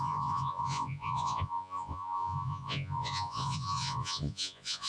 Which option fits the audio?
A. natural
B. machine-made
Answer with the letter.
B